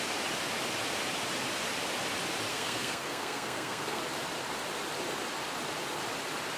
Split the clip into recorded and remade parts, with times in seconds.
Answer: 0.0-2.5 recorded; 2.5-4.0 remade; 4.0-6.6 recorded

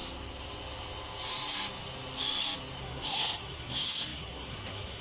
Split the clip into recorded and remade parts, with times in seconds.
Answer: 0.0-2.8 recorded; 2.8-5.0 remade

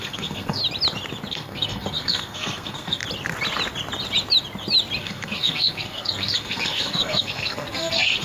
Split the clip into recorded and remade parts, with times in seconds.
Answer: 0.0-0.6 remade; 0.6-1.3 recorded; 1.3-3.0 remade; 3.0-5.0 recorded; 5.0-8.2 remade